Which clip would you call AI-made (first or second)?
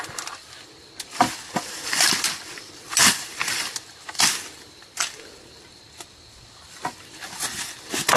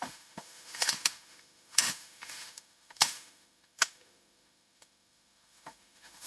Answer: second